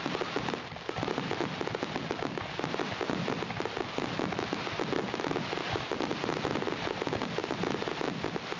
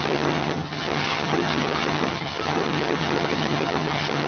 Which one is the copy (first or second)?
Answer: second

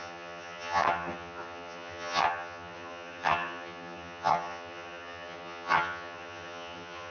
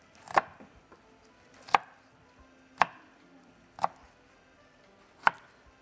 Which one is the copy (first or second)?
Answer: first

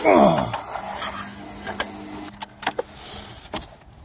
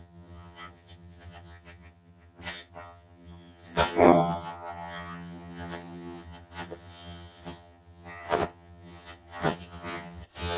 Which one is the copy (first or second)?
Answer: second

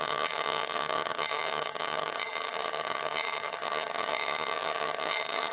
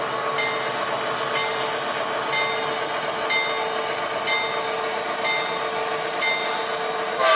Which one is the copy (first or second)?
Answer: first